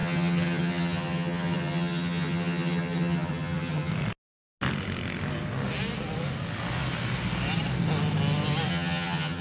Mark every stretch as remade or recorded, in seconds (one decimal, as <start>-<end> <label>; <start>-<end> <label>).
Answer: 0.0-3.9 remade; 3.9-8.7 recorded; 8.7-9.4 remade